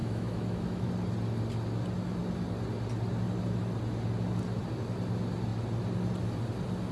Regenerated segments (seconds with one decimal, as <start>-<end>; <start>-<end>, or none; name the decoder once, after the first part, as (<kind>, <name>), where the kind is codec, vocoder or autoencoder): 0.0-0.9 (autoencoder, DAC-VAE)